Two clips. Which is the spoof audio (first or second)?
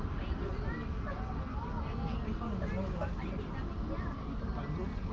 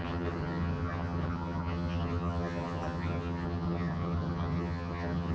second